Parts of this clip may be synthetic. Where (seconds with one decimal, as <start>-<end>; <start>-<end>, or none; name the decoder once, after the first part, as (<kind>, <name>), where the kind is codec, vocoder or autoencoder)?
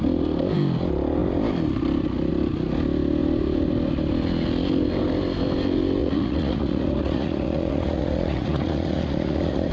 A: 6.0-9.7 (vocoder, Vocos)